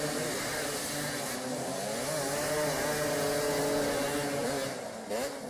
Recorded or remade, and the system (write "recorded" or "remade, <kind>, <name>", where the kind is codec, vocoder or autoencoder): recorded